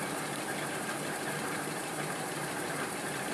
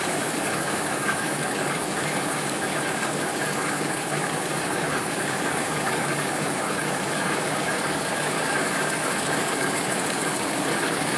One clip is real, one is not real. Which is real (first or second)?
first